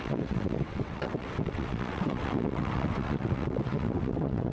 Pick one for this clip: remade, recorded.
remade